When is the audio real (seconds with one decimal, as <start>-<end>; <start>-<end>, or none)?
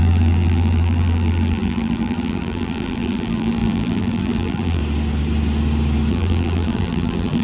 4.8-6.1